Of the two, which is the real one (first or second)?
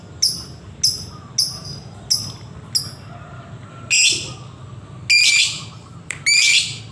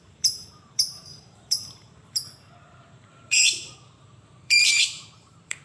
first